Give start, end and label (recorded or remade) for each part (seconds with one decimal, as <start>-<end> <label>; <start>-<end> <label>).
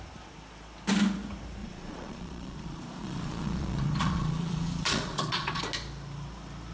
0.0-1.6 recorded; 1.6-5.6 remade; 5.6-6.7 recorded